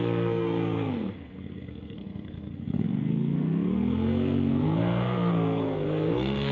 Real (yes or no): no